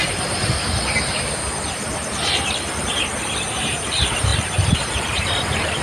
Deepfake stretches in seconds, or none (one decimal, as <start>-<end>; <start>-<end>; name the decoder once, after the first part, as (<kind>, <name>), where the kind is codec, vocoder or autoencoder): 0.0-5.8 (vocoder, BigVGAN v2)